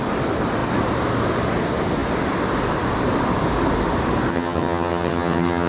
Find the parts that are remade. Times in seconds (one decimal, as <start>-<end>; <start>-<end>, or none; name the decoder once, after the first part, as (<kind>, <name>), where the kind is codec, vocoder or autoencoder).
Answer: 4.3-5.7 (vocoder, HiFi-GAN)